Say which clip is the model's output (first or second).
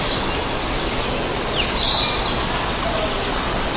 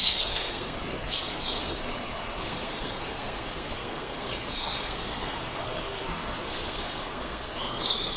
second